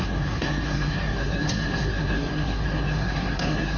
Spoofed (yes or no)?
yes